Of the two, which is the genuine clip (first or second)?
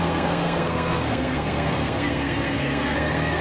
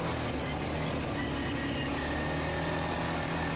second